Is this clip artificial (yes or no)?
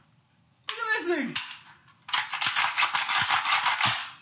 no